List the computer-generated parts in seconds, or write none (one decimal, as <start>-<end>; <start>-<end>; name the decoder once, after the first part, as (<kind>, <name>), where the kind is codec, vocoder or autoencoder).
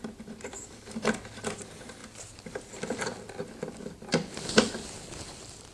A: none